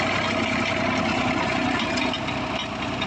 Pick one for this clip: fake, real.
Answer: real